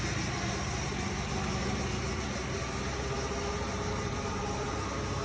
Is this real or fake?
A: real